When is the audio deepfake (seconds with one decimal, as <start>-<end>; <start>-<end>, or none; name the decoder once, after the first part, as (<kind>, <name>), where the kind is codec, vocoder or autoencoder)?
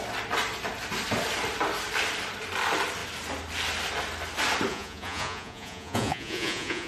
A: 4.7-6.9 (vocoder, Vocos)